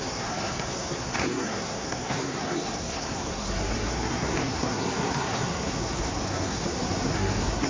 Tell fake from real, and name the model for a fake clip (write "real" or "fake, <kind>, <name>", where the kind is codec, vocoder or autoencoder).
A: fake, codec, SNAC